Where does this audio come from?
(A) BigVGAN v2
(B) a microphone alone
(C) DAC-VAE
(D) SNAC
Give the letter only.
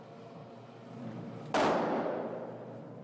B